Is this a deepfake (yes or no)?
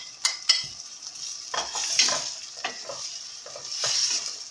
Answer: yes